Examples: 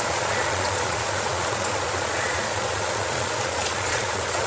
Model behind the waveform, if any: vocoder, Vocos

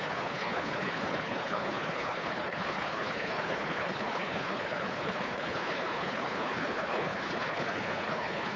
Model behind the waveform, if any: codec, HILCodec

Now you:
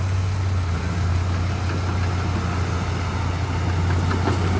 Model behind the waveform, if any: none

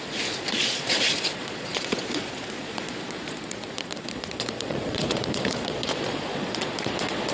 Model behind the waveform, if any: vocoder, Vocos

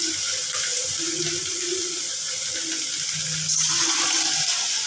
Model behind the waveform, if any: none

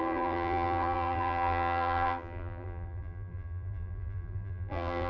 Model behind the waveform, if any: vocoder, BigVGAN v2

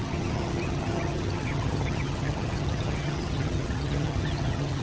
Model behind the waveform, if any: vocoder, HiFi-GAN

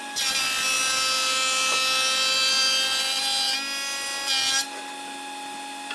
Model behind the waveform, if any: none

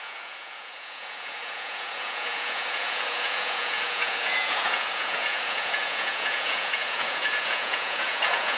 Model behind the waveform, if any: vocoder, Vocos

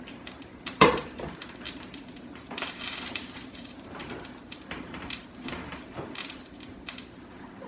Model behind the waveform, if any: vocoder, BigVGAN v2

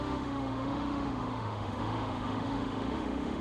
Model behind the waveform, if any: autoencoder, DAC-VAE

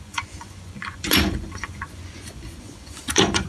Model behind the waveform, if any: vocoder, Vocos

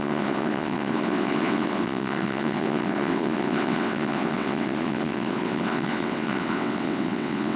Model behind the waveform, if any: vocoder, WaveNeXt